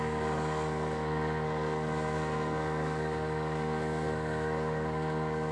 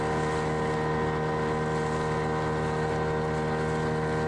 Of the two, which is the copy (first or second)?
first